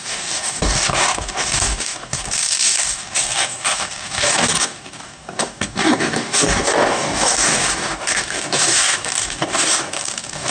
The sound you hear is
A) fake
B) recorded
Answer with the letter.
A